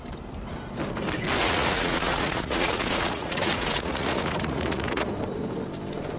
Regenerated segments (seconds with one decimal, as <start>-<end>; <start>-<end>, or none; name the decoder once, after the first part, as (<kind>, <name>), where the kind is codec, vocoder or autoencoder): 1.4-5.1 (vocoder, Vocos)